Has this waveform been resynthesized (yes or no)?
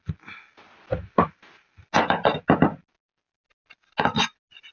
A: no